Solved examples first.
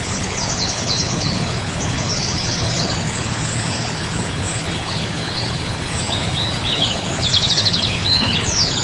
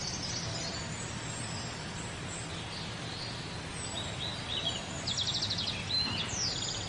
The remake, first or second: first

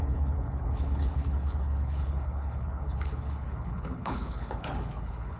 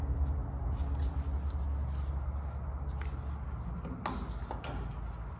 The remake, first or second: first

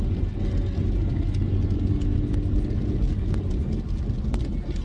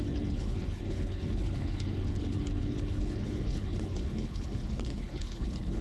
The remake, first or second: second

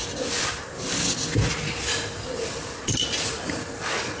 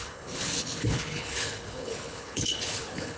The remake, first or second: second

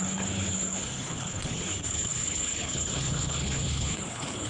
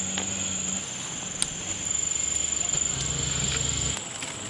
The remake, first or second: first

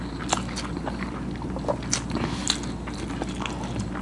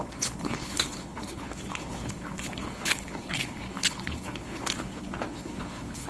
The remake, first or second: second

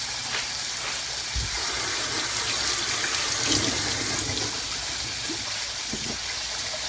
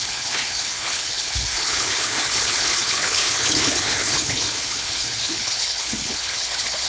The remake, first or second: second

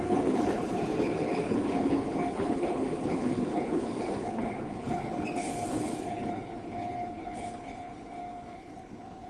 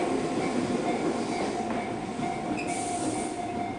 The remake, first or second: first